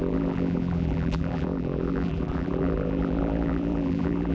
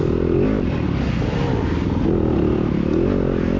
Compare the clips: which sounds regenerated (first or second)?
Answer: first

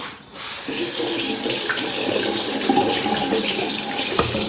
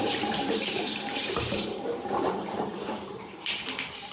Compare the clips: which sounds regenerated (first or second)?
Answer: second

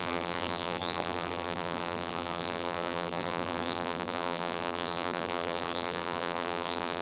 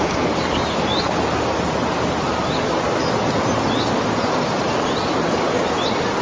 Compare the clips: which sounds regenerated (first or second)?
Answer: first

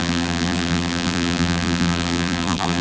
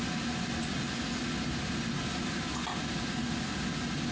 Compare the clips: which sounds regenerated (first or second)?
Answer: first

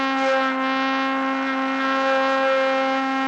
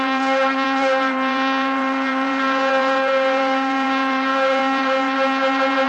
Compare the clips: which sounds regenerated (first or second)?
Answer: second